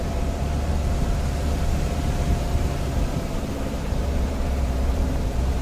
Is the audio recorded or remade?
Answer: remade